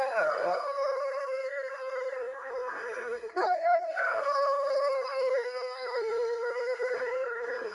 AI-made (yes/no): yes